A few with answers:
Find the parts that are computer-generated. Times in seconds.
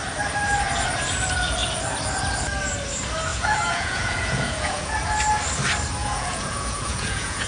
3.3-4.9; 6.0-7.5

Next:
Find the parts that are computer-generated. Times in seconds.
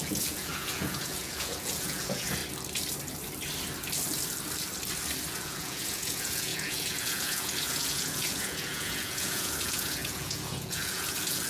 0.0-2.4; 5.3-11.5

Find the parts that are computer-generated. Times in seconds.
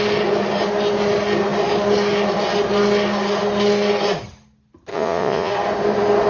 4.9-5.5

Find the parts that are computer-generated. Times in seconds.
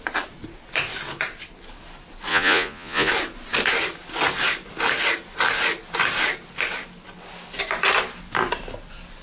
2.3-3.1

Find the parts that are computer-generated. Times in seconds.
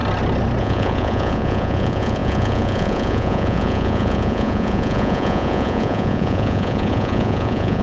0.6-7.8